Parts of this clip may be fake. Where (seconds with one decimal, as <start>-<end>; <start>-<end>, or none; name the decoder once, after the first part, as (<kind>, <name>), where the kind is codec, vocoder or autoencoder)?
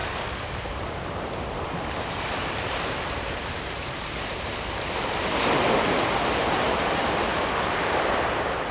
0.7-7.0 (vocoder, BigVGAN v2); 7.6-8.7